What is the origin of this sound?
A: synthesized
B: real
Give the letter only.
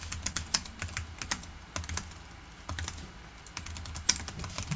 B